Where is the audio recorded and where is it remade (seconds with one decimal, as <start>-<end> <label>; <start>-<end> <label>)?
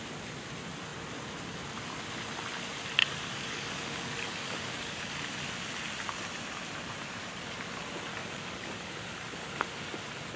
0.0-3.0 recorded; 3.0-5.0 remade; 5.0-8.1 recorded; 8.1-8.9 remade; 8.9-10.4 recorded